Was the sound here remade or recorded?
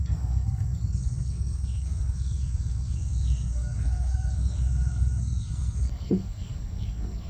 remade